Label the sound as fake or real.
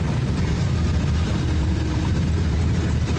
real